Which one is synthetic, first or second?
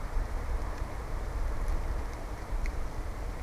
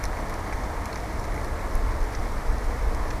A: first